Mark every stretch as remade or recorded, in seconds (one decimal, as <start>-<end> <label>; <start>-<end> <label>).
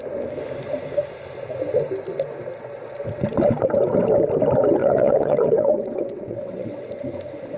0.0-4.8 recorded; 4.8-6.9 remade; 6.9-7.6 recorded